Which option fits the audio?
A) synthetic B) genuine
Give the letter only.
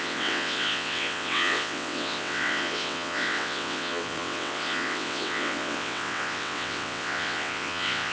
A